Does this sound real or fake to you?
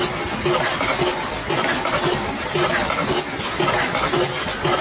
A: real